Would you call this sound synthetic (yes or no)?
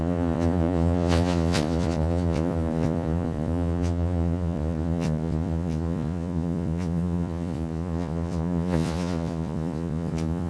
yes